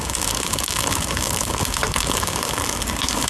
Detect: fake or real fake